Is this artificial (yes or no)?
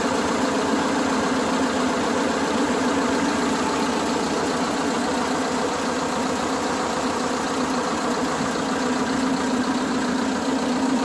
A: no